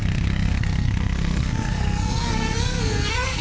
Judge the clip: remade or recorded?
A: remade